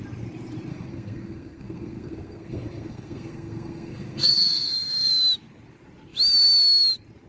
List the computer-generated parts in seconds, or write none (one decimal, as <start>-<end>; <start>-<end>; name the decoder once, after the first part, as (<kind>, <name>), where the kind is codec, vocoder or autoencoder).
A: 0.7-5.1 (codec, SNAC)